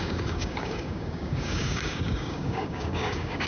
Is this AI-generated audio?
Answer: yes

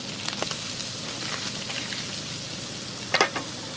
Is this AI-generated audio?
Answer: no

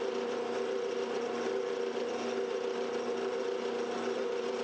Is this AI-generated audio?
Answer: no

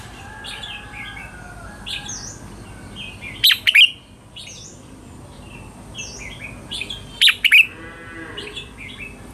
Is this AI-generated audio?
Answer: no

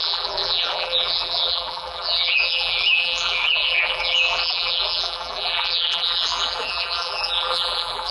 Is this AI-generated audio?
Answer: yes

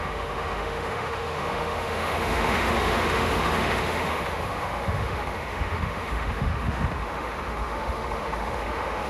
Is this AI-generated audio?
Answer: yes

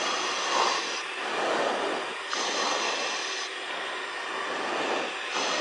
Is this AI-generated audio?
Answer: no